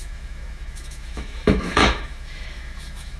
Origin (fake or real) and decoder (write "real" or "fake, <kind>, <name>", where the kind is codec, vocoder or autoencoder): fake, autoencoder, DAC-VAE